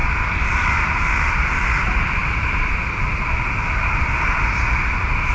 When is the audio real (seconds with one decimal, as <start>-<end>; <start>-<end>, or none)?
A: 0.0-2.2; 2.9-5.3